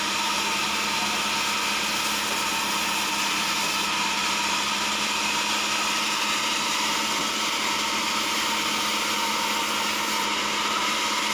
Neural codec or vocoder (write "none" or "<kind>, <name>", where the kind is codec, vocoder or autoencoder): none